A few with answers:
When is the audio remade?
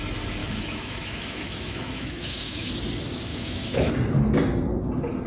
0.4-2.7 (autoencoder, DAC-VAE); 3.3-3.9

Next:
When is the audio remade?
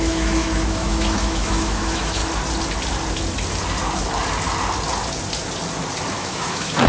0.0-2.2 (autoencoder, DAC-VAE); 6.1-6.9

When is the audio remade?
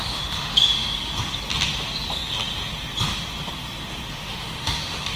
0.0-1.1 (autoencoder, DAC-VAE); 4.1-5.2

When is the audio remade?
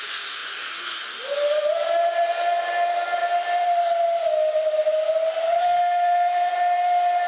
5.6-6.5 (autoencoder, DAC-VAE)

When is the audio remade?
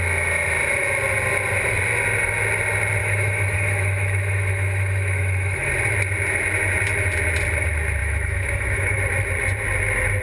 3.0-5.7 (autoencoder, DAC-VAE); 8.0-9.0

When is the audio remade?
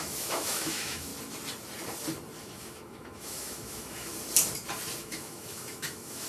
0.0-1.1 (autoencoder, DAC-VAE); 2.4-4.1; 5.0-6.3